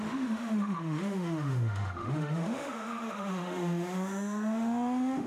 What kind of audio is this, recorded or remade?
remade